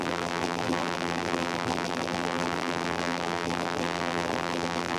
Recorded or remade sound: remade